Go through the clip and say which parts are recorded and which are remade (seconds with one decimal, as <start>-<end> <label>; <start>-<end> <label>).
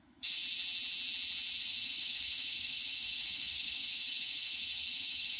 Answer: 0.0-0.4 remade; 0.4-1.6 recorded; 1.6-5.4 remade